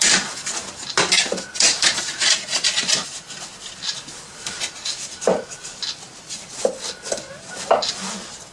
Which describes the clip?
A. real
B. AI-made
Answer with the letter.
A